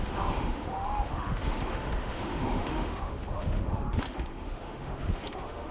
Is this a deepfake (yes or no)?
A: yes